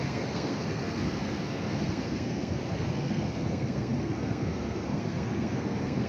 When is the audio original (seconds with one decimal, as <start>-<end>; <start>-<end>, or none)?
none